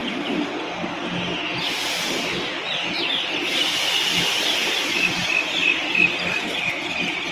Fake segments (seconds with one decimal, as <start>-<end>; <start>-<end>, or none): none